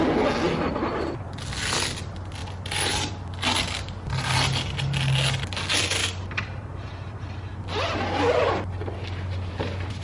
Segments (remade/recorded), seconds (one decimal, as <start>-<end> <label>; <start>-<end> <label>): 0.0-10.0 recorded